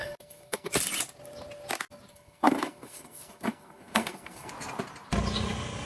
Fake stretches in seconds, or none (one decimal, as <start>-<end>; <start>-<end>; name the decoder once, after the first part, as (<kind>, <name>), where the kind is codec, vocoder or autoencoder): 0.0-0.7 (codec, SNAC); 2.1-4.5